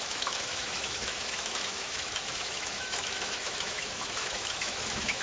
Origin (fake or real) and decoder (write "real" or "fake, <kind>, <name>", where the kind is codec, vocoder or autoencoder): fake, autoencoder, DAC-VAE